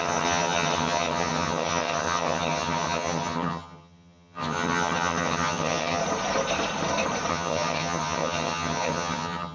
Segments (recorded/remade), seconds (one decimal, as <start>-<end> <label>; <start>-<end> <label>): 0.0-6.0 remade; 6.0-7.3 recorded; 7.3-9.5 remade